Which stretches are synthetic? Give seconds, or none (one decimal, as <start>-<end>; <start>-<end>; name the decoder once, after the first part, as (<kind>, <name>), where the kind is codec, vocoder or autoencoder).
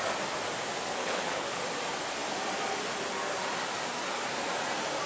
0.9-1.6 (codec, HILCodec)